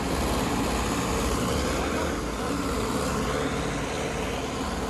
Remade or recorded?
recorded